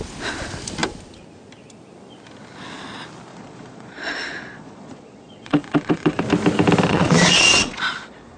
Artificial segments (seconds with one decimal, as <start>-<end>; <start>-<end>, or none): 3.3-6.2; 6.9-8.4